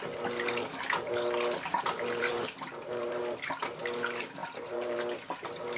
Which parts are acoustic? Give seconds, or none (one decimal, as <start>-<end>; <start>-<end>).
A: 0.0-1.7; 3.2-4.4; 5.0-5.8